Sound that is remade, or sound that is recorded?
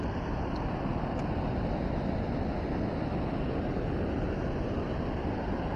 recorded